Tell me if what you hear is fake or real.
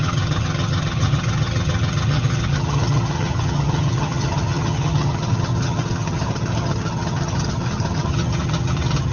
fake